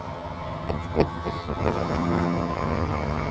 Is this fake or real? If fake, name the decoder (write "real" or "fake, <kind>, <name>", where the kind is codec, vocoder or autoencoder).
fake, vocoder, HiFi-GAN